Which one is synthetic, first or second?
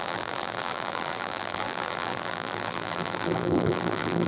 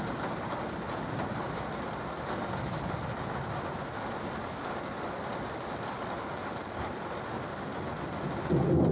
first